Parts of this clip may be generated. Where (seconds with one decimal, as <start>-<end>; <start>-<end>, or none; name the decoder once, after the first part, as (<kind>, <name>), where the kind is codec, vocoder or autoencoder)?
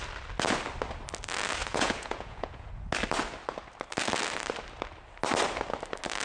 1.6-2.7 (vocoder, Vocos)